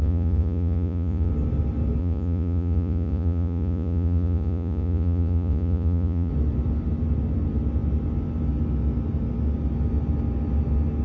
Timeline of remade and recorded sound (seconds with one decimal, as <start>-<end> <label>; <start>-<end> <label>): 0.0-1.3 remade; 1.3-2.0 recorded; 2.0-6.3 remade; 6.3-11.0 recorded